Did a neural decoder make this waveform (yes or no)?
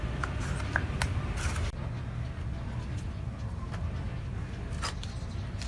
no